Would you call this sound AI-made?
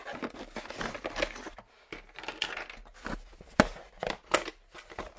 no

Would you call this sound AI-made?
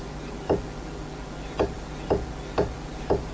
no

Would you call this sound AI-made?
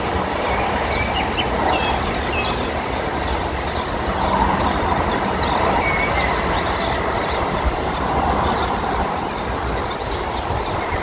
no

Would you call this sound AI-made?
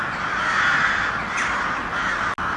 no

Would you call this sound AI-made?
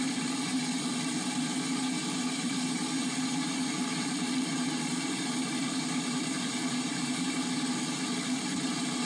yes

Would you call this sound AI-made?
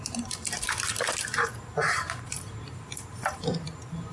yes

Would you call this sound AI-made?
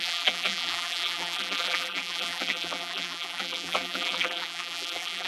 yes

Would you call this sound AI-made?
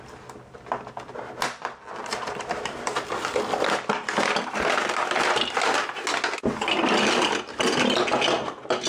no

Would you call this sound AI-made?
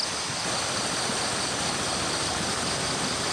no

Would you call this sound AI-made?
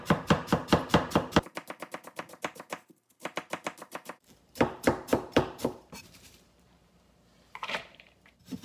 yes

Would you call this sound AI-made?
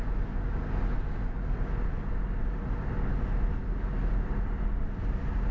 no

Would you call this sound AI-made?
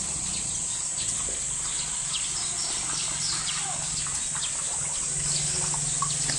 no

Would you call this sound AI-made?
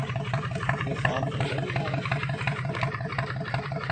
yes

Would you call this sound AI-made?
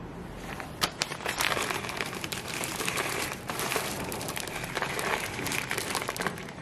yes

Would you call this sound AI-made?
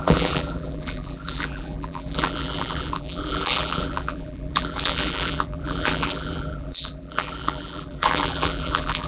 yes